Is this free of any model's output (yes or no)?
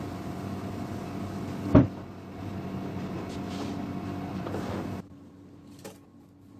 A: yes